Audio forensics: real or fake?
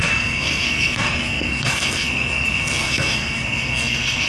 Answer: fake